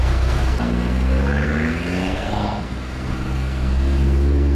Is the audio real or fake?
fake